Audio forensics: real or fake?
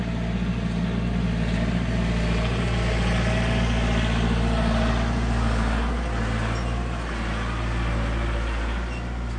real